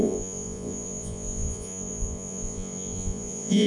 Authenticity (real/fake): fake